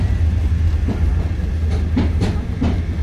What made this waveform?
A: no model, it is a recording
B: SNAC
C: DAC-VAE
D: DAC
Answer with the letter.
A